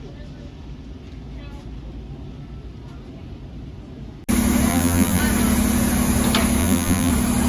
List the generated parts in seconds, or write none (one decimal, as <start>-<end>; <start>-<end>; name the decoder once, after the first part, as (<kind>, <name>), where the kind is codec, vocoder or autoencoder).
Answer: 4.7-5.2 (vocoder, BigVGAN v2); 6.6-7.1